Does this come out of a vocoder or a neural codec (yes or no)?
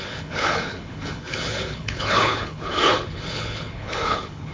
yes